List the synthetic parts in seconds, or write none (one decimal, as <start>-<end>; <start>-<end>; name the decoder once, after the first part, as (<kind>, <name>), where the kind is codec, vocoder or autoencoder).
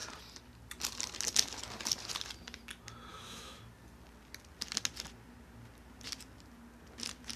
3.1-3.6 (autoencoder, DAC-VAE)